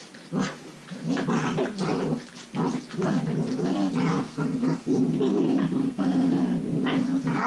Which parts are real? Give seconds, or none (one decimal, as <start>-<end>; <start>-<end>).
0.0-4.1; 5.0-5.8; 6.3-7.5